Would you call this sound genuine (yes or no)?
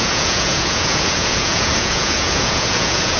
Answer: no